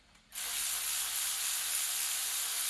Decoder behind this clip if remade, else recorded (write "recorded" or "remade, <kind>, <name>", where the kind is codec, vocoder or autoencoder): recorded